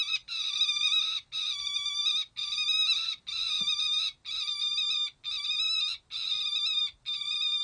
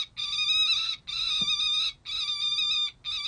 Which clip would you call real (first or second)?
second